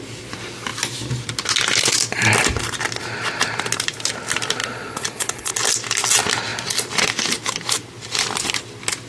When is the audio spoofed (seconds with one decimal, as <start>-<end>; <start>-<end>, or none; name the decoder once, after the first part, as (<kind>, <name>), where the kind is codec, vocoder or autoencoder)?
4.6-5.5 (vocoder, Vocos)